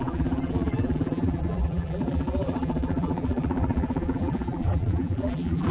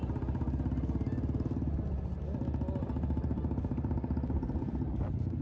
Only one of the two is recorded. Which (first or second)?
second